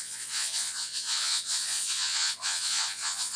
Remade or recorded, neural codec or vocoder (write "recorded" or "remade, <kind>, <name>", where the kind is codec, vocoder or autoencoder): remade, vocoder, Vocos